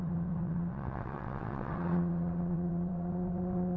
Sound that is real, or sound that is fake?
fake